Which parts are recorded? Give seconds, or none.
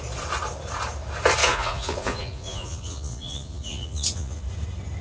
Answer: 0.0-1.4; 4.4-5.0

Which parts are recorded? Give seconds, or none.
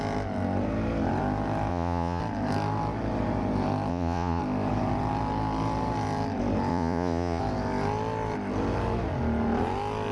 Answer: 0.0-1.7; 2.2-3.9; 4.4-6.7; 7.4-10.1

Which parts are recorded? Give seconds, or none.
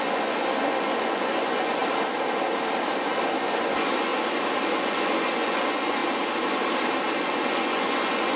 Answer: 1.8-3.4; 4.1-4.6; 6.0-7.2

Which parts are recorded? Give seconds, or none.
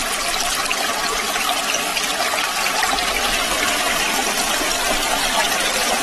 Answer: 0.0-6.0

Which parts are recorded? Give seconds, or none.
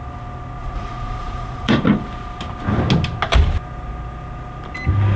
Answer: 0.0-0.6; 1.7-5.2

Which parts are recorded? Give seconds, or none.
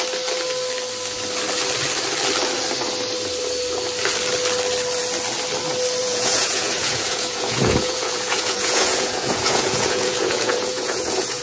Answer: 0.0-6.0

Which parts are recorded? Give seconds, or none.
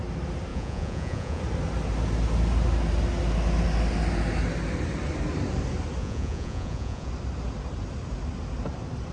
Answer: 0.0-0.5; 1.4-6.0; 7.1-9.1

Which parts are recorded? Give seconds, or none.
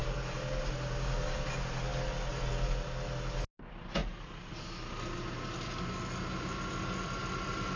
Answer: 0.0-7.8